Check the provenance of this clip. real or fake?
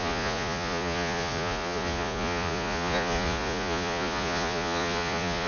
fake